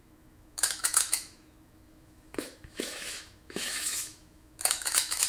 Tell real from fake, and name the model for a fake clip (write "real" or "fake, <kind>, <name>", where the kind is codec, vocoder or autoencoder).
fake, autoencoder, DAC-VAE